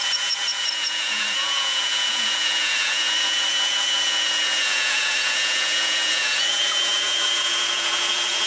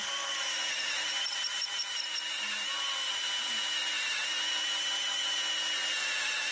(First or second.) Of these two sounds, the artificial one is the first